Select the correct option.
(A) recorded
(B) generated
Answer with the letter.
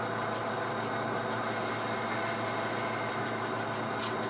A